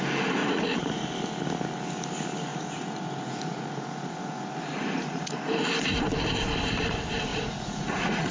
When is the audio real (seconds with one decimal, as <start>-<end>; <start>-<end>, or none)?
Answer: 0.0-0.4; 1.0-2.5; 5.3-7.3